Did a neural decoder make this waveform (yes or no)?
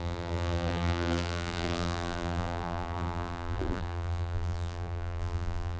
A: yes